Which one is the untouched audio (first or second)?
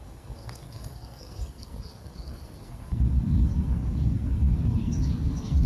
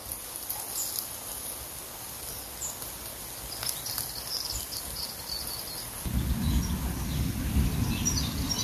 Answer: second